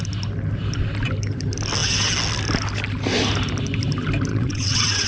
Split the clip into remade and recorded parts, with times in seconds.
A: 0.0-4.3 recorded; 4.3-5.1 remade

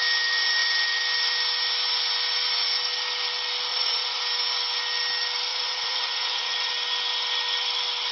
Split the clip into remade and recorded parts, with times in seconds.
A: 0.0-3.7 recorded; 3.7-4.2 remade; 4.2-5.5 recorded; 5.5-6.7 remade; 6.7-8.1 recorded

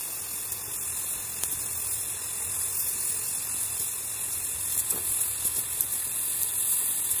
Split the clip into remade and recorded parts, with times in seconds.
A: 0.0-5.3 remade; 5.3-5.8 recorded; 5.8-7.2 remade

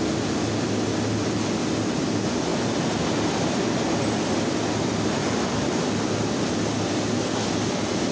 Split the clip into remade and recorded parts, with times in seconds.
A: 0.0-8.1 recorded

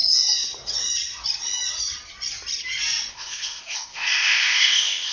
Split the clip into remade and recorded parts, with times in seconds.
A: 0.0-3.1 recorded; 3.1-5.1 remade

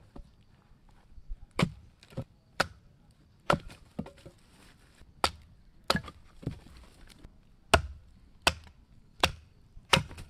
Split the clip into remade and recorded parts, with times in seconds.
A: 0.0-3.9 remade; 3.9-9.1 recorded; 9.1-10.3 remade